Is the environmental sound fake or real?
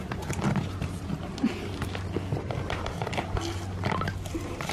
real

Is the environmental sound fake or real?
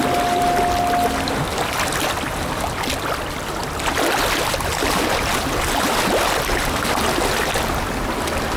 real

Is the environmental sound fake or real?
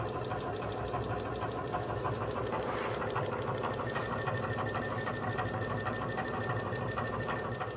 real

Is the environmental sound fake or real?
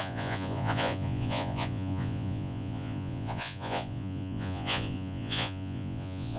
fake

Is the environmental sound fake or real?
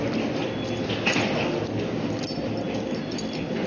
real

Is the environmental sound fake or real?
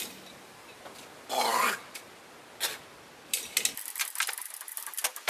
real